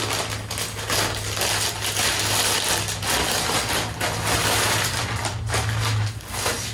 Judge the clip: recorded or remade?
recorded